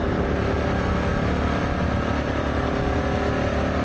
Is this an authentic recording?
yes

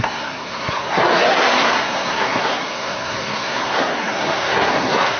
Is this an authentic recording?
no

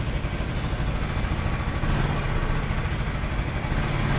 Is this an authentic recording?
yes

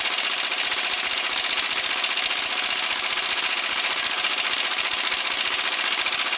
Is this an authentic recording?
yes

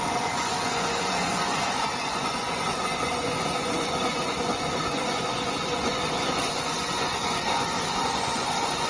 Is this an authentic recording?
no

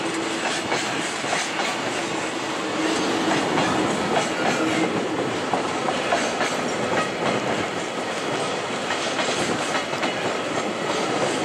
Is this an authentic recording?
yes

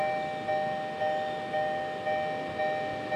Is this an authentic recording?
yes